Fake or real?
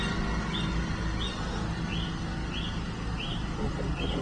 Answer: real